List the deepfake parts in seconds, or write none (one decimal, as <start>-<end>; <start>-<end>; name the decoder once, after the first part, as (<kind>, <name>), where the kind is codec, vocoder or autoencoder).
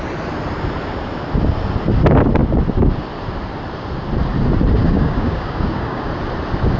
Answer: 4.8-6.1 (codec, DAC)